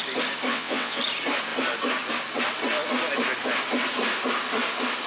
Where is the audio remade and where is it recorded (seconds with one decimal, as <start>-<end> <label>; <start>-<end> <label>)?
0.0-0.5 recorded; 0.5-1.0 remade; 1.0-5.1 recorded